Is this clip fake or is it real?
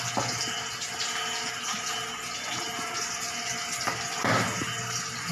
real